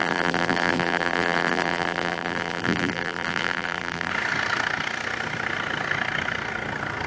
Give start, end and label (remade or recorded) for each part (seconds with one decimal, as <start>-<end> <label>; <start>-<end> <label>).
0.0-4.1 remade; 4.1-7.1 recorded